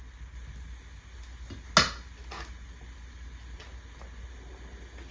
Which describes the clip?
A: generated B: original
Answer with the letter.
B